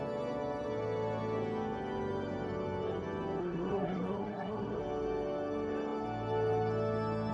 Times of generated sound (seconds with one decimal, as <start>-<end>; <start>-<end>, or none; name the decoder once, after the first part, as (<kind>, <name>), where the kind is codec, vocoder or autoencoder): 3.4-4.8 (codec, SNAC)